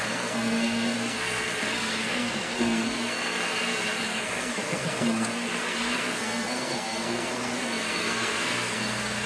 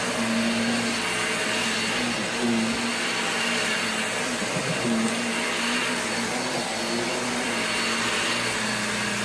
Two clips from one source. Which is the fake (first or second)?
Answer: first